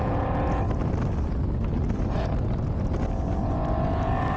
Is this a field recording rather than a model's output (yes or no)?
yes